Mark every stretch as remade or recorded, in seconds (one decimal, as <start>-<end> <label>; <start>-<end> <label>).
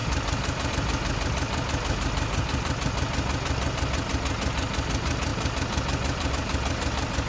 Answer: 0.0-7.3 recorded